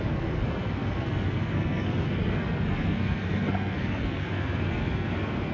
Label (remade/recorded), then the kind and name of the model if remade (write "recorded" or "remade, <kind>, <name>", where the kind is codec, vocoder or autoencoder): remade, codec, SNAC